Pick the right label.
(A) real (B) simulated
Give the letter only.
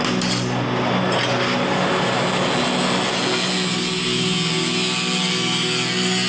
A